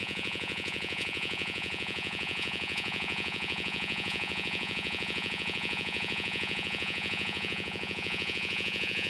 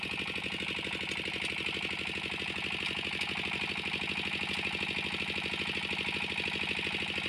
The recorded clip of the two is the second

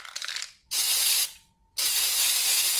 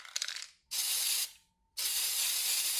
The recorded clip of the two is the second